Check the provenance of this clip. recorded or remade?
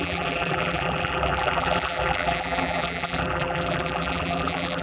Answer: remade